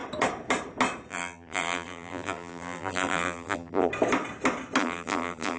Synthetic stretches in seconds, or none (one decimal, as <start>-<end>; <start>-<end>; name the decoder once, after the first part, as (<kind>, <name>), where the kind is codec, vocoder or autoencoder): 1.1-3.9 (vocoder, BigVGAN v2); 4.8-5.6